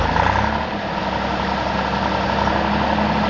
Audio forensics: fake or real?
real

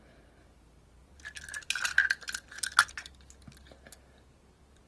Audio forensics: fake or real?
real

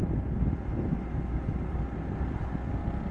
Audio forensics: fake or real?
real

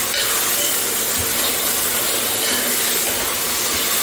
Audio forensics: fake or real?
real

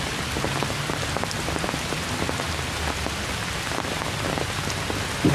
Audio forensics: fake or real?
real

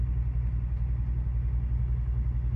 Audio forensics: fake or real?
real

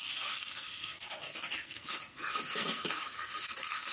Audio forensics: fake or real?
fake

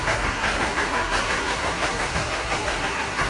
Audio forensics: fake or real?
fake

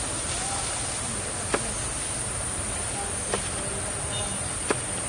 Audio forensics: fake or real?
real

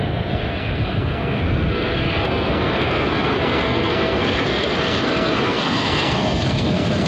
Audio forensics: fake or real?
fake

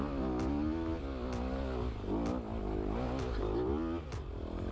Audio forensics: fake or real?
real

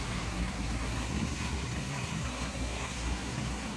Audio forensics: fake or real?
fake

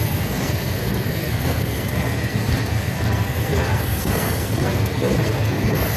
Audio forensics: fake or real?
fake